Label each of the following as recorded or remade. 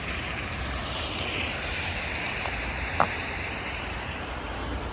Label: remade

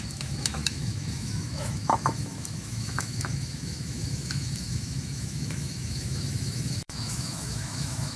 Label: remade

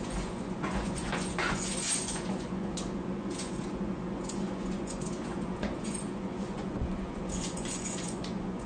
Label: remade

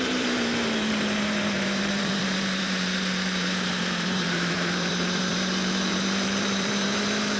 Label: remade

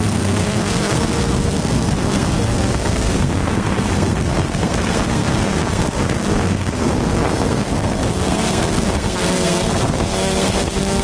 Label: remade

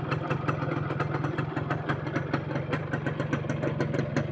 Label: recorded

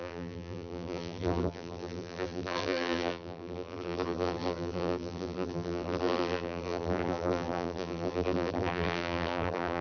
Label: remade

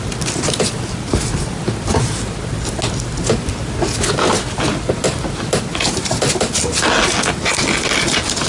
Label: recorded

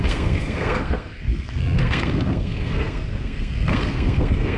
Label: remade